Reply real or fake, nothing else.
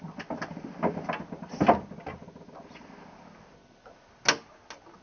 real